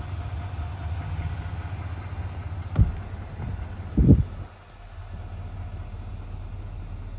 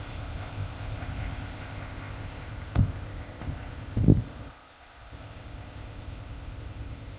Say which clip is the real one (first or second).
first